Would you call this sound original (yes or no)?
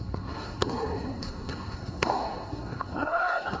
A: no